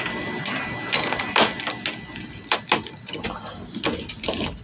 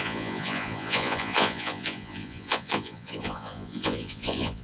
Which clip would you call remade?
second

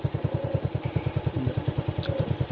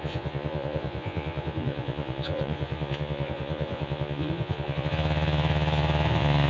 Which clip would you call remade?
second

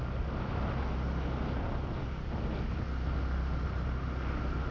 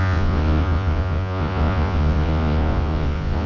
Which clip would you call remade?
second